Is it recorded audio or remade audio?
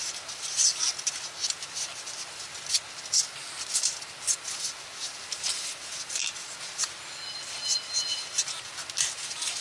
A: recorded